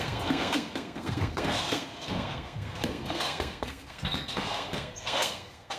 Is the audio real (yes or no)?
no